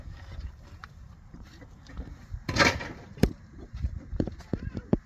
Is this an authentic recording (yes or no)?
no